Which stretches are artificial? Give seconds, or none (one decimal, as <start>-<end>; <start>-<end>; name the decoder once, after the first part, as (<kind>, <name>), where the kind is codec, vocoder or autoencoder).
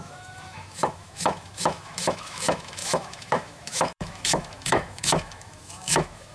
0.0-6.3 (autoencoder, DAC-VAE)